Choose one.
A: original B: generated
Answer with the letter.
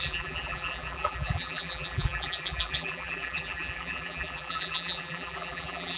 B